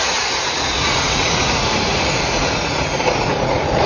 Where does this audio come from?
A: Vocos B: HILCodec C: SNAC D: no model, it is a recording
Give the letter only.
A